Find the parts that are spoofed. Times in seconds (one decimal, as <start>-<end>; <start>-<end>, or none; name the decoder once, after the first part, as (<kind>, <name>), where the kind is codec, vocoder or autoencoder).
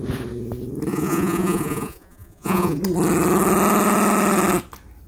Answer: 0.9-2.8 (vocoder, Vocos)